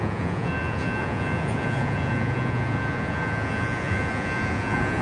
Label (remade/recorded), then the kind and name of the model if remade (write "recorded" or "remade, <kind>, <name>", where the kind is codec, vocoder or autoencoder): remade, vocoder, Vocos